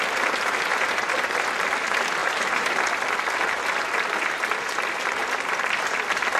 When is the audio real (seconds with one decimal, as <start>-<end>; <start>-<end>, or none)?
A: 0.0-2.2; 2.8-6.4